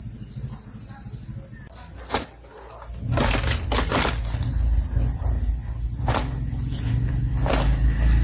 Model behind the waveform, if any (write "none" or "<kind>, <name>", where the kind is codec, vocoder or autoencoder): none